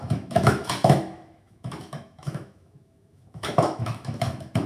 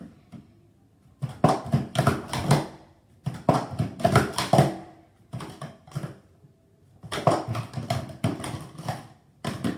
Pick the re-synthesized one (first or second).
first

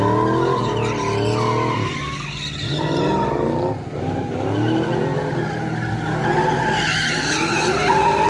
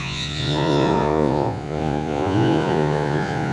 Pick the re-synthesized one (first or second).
second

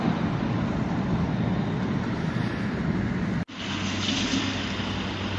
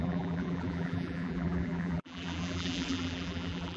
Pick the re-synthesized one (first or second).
second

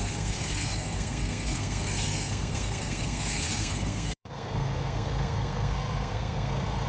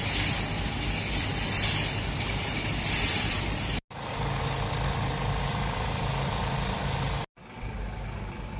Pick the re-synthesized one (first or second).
first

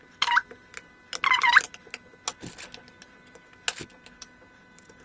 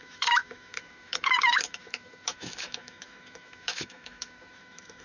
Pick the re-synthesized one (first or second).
second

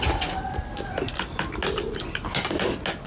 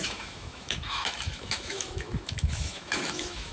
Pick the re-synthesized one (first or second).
second